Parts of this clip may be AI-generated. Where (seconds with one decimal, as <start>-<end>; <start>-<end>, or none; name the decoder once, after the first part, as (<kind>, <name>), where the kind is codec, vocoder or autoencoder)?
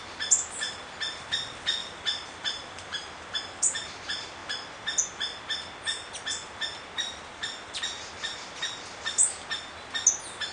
1.8-3.3 (vocoder, BigVGAN v2); 7.3-8.1